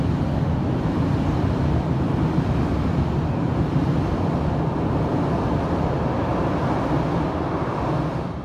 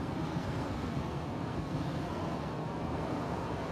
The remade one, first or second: second